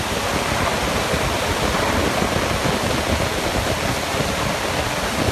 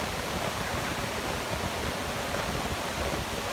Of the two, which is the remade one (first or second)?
first